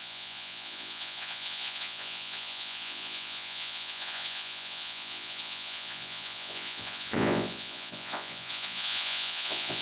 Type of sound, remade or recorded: remade